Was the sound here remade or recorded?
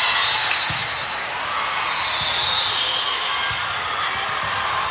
recorded